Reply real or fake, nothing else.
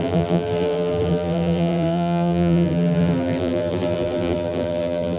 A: fake